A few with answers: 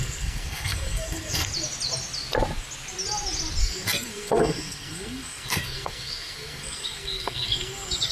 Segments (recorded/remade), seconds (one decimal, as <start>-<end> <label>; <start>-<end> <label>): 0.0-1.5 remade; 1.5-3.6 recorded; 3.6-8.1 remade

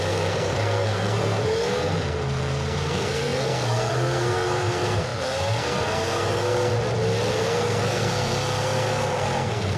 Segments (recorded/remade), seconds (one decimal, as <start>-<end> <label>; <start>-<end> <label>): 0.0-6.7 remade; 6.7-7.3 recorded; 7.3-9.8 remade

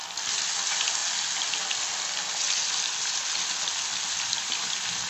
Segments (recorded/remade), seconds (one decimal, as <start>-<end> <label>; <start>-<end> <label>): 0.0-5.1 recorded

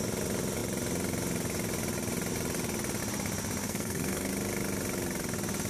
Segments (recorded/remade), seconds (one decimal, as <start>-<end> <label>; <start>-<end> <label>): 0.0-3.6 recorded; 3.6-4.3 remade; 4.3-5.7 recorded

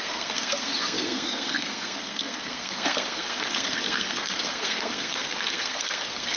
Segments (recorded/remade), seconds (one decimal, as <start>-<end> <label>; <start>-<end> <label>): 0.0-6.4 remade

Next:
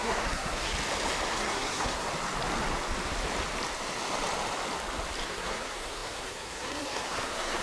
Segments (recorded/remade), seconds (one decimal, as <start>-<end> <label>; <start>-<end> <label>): 0.0-0.7 remade; 0.7-1.3 recorded; 1.3-2.1 remade; 2.1-5.3 recorded; 5.3-7.6 remade

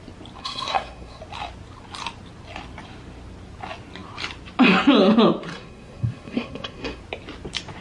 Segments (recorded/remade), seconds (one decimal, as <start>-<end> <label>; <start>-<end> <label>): 0.0-0.4 recorded; 0.4-1.2 remade; 1.2-5.5 recorded; 5.5-7.0 remade; 7.0-7.8 recorded

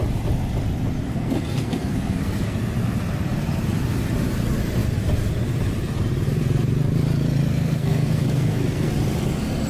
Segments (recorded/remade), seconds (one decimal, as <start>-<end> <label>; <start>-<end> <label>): 0.0-1.1 recorded; 1.1-2.6 remade; 2.6-7.5 recorded; 7.5-8.9 remade; 8.9-9.7 recorded